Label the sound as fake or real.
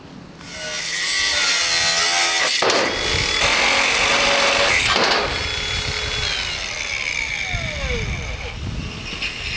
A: real